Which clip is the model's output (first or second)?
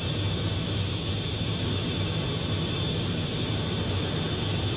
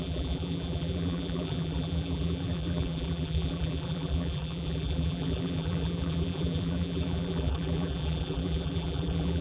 second